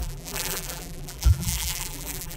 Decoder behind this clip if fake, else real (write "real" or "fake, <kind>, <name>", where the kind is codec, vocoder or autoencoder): fake, vocoder, BigVGAN v2